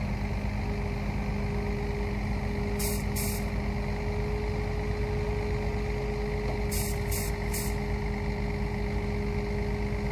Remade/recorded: recorded